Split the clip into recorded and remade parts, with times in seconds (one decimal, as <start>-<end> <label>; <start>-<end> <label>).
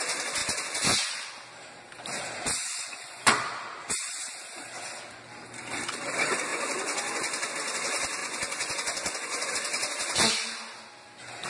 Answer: 0.0-0.4 recorded; 0.4-1.3 remade; 1.3-2.6 recorded; 2.6-3.3 remade; 3.3-6.5 recorded; 6.5-7.5 remade; 7.5-8.2 recorded; 8.2-9.5 remade; 9.5-11.5 recorded